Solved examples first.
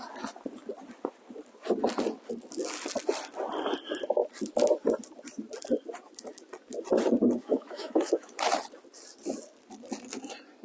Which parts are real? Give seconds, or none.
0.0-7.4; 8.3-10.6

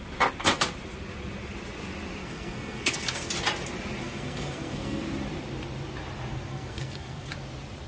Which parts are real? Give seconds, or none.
0.0-2.2; 3.3-4.0; 5.0-6.5; 7.3-7.9

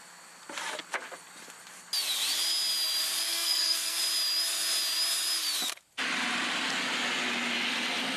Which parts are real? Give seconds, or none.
0.0-3.3; 4.0-8.2

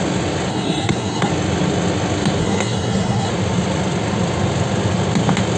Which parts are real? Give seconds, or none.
0.0-0.5; 1.3-2.4; 3.3-5.6

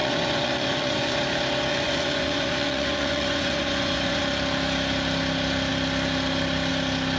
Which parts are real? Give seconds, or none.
1.2-1.7; 4.2-7.2